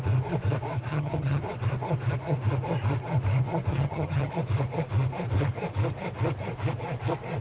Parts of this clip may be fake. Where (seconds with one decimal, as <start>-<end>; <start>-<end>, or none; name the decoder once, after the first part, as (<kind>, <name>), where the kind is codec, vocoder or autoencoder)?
0.9-1.4 (vocoder, HiFi-GAN); 3.7-4.3